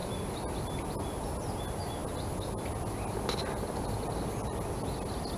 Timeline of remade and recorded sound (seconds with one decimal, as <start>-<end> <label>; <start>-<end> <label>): 0.0-5.4 recorded